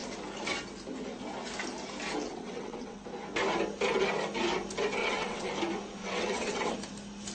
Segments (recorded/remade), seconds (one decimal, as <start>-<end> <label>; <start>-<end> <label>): 0.0-2.3 recorded; 2.3-3.0 remade; 3.0-5.0 recorded; 5.0-5.5 remade; 5.5-6.0 recorded; 6.0-6.7 remade; 6.7-7.3 recorded